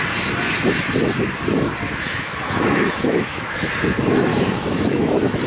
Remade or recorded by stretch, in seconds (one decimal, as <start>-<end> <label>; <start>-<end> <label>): 0.0-2.1 recorded; 2.1-3.7 remade; 3.7-4.3 recorded; 4.3-5.5 remade